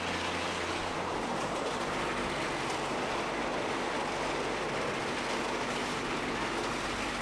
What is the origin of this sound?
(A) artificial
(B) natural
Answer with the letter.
B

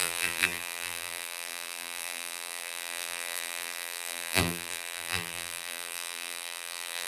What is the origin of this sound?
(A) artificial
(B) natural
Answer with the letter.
A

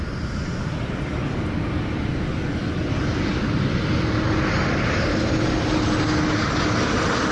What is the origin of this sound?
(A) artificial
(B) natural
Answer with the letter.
B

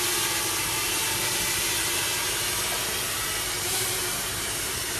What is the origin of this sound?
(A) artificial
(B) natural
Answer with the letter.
A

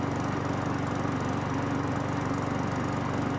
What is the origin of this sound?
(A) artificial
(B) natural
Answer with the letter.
B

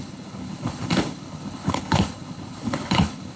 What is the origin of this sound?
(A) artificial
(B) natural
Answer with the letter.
A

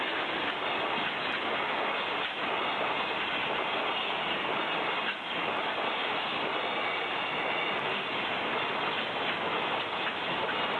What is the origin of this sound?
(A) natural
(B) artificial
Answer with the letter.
A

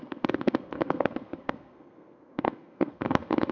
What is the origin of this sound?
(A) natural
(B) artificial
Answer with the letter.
B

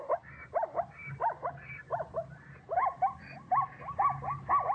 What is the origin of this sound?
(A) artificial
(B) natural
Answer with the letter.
B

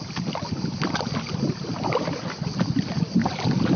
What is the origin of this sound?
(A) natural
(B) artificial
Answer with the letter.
A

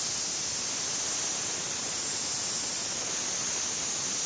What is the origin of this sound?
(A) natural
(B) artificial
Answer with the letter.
A